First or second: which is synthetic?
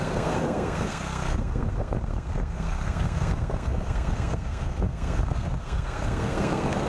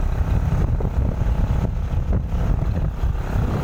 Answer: first